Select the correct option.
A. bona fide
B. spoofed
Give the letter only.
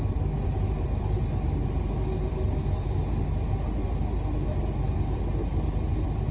A